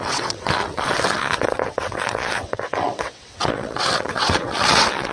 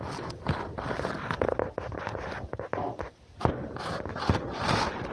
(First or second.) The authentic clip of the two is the second